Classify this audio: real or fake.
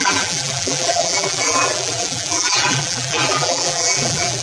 fake